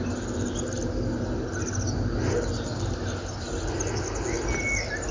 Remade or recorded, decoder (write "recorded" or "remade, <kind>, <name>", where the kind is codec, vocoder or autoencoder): recorded